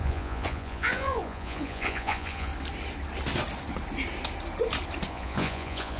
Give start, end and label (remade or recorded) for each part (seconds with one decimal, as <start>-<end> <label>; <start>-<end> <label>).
0.0-2.5 remade; 2.5-5.1 recorded; 5.1-6.0 remade